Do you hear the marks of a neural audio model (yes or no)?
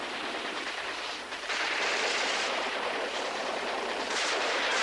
yes